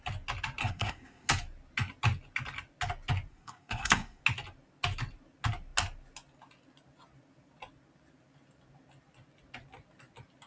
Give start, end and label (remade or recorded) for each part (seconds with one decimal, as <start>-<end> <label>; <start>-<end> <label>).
0.0-0.6 recorded; 0.6-1.3 remade; 1.3-3.3 recorded; 3.3-4.2 remade; 4.2-10.5 recorded